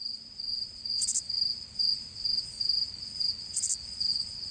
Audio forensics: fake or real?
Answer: real